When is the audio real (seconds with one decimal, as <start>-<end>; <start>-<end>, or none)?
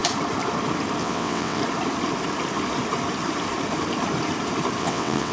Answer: 0.0-1.0; 1.6-4.8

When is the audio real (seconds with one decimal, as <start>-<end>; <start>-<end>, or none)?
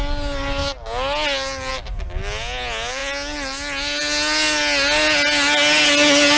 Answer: 0.0-6.4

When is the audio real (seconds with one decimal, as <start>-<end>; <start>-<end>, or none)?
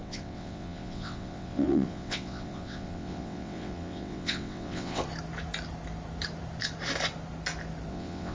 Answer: 5.0-7.9